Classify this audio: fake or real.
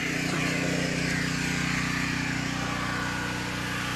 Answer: real